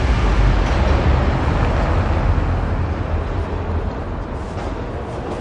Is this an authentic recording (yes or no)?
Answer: yes